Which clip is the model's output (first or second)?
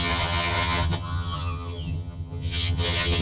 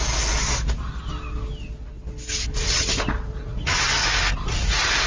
first